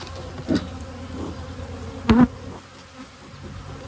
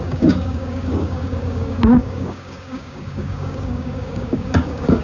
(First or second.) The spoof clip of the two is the second